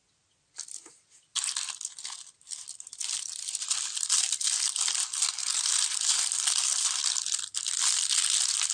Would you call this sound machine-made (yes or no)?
no